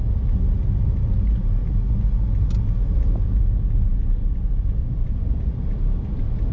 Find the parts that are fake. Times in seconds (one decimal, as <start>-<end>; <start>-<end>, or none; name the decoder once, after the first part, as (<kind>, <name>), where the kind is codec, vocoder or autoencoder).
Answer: 4.8-5.6 (vocoder, BigVGAN v2)